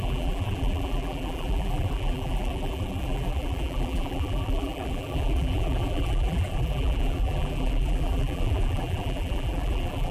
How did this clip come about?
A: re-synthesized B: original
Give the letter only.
A